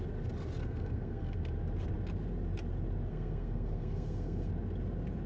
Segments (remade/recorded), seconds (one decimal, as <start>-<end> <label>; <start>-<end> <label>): 0.0-0.6 recorded; 0.6-1.4 remade; 1.4-3.1 recorded; 3.1-4.5 remade; 4.5-5.3 recorded